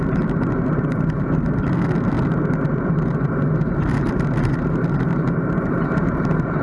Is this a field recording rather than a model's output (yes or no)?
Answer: yes